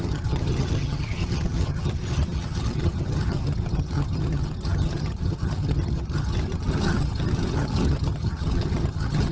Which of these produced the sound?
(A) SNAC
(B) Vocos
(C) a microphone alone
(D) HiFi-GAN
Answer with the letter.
D